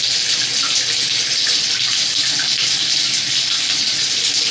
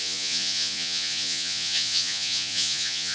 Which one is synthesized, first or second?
second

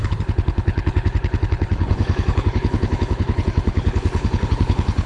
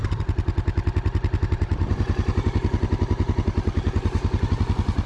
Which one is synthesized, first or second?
first